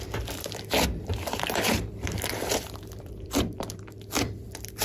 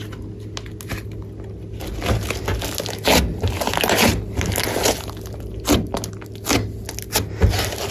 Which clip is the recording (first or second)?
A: second